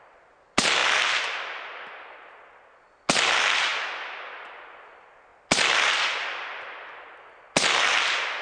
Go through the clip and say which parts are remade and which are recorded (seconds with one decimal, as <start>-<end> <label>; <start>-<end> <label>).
0.0-8.4 recorded